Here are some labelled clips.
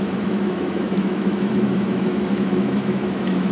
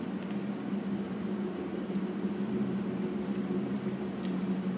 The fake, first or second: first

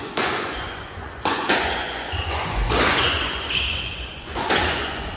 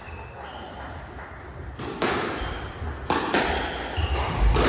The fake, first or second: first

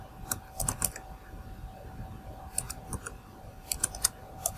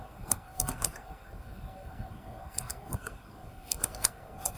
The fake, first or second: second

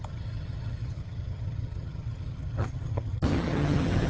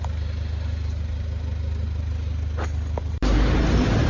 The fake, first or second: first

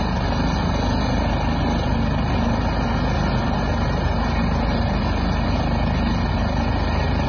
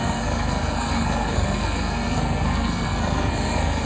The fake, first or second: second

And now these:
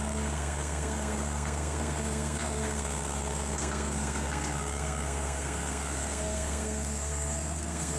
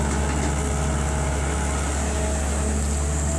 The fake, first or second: first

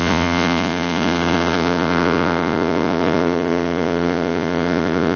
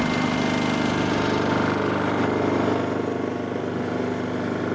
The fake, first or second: first